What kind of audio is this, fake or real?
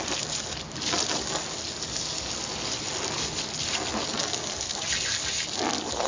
real